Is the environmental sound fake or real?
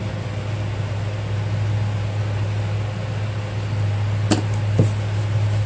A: real